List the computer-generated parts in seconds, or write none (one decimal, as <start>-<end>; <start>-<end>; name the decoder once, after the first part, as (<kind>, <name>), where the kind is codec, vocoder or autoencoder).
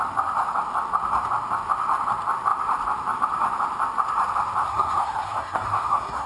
4.6-6.3 (codec, SNAC)